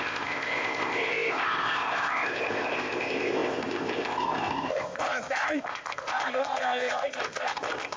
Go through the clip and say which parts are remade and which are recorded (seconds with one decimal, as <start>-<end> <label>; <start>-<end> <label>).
0.0-8.0 remade